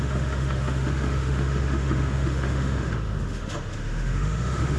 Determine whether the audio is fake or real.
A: fake